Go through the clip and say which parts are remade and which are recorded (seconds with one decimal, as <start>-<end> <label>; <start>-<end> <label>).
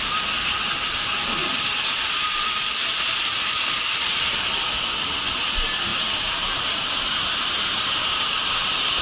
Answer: 0.0-5.9 recorded; 5.9-9.0 remade